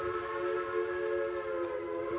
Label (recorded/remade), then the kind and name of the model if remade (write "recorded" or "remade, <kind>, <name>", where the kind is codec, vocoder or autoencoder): recorded